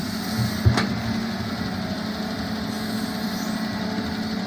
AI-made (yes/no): no